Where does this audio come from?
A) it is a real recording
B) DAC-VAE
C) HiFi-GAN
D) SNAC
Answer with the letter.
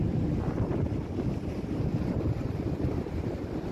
A